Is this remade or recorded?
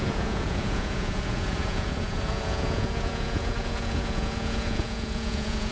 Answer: remade